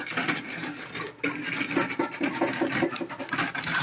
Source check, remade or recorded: recorded